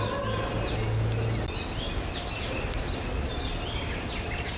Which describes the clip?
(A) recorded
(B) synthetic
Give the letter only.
A